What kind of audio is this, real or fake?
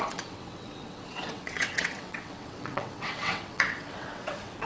fake